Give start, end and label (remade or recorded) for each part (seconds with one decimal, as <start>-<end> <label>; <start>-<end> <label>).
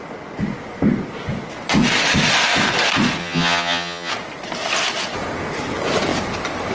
0.0-3.2 recorded; 3.2-4.1 remade; 4.1-6.7 recorded